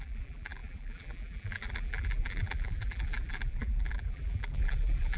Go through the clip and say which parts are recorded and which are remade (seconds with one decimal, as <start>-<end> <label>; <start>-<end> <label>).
0.0-5.2 remade